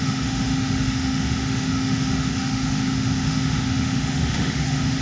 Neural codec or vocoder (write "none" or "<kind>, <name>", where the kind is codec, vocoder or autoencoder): autoencoder, DAC-VAE